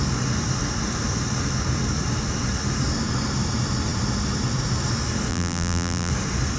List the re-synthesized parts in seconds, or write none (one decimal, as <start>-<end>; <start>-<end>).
5.3-6.1